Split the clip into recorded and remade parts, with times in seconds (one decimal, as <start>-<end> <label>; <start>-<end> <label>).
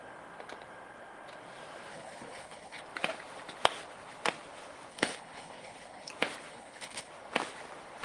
0.0-1.9 recorded; 1.9-2.8 remade; 2.8-4.9 recorded; 4.9-6.1 remade; 6.1-6.5 recorded; 6.5-7.1 remade; 7.1-8.0 recorded